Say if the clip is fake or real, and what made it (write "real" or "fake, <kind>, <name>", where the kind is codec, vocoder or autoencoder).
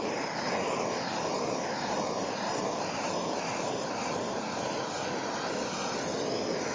real